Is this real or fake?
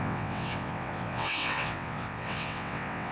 fake